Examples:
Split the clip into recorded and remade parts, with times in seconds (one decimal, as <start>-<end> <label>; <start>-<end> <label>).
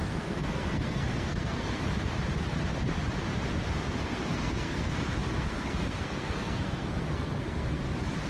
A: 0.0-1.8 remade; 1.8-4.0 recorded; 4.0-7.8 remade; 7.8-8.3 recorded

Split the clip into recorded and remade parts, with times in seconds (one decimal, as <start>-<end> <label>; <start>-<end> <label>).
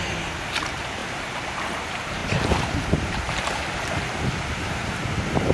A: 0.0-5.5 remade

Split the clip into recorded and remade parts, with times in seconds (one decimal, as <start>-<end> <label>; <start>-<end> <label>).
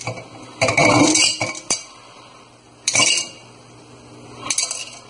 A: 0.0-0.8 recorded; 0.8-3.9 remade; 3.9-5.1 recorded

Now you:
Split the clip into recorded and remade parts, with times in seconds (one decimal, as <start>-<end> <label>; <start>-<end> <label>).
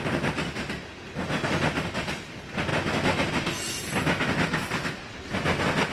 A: 0.0-5.9 recorded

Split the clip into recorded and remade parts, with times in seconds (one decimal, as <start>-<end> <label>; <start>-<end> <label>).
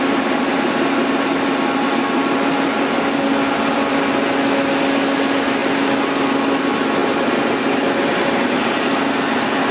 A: 0.0-5.6 recorded; 5.6-6.3 remade; 6.3-7.0 recorded; 7.0-8.7 remade; 8.7-9.7 recorded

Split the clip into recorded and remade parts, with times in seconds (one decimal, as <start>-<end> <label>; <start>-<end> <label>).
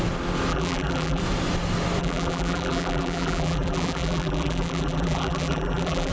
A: 0.0-0.5 recorded; 0.5-1.2 remade; 1.2-2.0 recorded; 2.0-6.1 remade